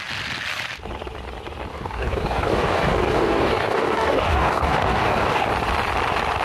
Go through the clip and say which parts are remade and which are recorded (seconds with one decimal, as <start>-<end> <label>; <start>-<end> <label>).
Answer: 0.0-1.7 recorded; 1.7-5.5 remade; 5.5-6.4 recorded

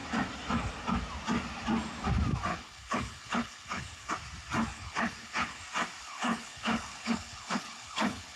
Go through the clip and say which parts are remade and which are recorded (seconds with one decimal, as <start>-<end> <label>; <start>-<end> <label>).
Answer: 0.0-2.5 recorded; 2.5-4.1 remade; 4.1-4.7 recorded; 4.7-5.6 remade; 5.6-6.0 recorded; 6.0-8.4 remade

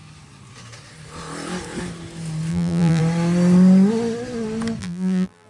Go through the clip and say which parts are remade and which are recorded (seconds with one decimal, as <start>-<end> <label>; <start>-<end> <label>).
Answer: 0.0-2.5 recorded; 2.5-3.0 remade; 3.0-4.8 recorded; 4.8-5.5 remade

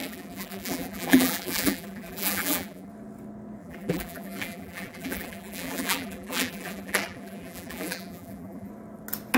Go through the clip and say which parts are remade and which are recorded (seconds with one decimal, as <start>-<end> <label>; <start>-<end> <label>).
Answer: 0.0-2.9 remade; 2.9-3.6 recorded; 3.6-8.7 remade; 8.7-9.4 recorded

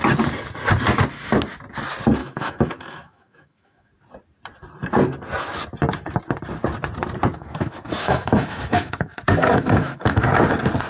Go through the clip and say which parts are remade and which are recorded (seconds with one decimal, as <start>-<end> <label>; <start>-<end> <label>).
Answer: 0.0-2.2 recorded; 2.2-3.9 remade; 3.9-7.3 recorded; 7.3-10.3 remade; 10.3-10.9 recorded

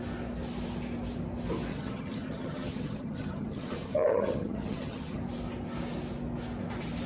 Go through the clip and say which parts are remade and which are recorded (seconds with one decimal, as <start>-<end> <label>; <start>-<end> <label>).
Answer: 0.0-1.7 recorded; 1.7-5.2 remade; 5.2-7.1 recorded

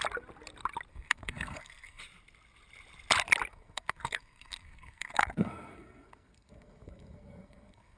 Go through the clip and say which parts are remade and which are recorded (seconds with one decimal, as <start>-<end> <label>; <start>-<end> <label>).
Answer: 0.0-0.9 recorded; 0.9-2.0 remade; 2.0-3.5 recorded; 3.5-8.0 remade